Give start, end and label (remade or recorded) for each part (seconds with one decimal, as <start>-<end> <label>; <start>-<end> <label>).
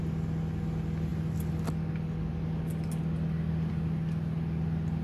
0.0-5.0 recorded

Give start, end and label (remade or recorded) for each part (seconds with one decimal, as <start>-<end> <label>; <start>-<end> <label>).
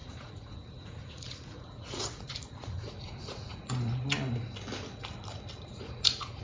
0.0-3.7 remade; 3.7-5.7 recorded; 5.7-6.4 remade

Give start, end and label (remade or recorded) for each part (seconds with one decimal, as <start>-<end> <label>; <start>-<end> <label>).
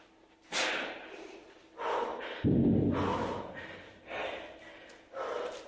0.0-5.7 recorded